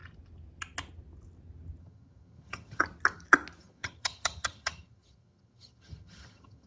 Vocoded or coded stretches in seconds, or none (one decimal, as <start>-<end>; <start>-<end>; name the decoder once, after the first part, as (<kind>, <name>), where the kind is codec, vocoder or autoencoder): 1.8-2.8 (vocoder, HiFi-GAN); 3.6-6.7